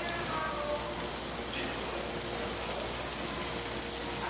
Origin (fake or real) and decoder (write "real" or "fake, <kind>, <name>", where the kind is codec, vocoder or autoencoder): real